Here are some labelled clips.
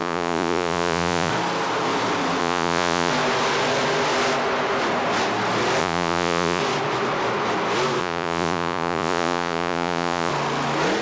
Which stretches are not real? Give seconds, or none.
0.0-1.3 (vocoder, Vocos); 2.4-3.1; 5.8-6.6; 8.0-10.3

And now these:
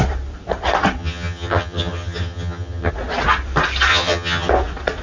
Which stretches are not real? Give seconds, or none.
1.0-2.9 (vocoder, HiFi-GAN); 3.9-4.5